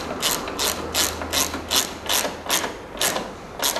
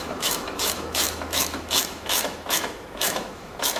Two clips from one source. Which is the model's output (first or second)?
second